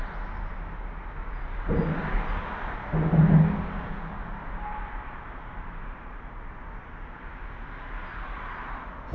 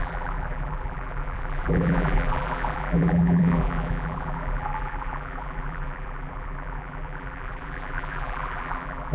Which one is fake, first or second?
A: second